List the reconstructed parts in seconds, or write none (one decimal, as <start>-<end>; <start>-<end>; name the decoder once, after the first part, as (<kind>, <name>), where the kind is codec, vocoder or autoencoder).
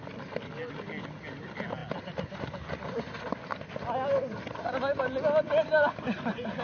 none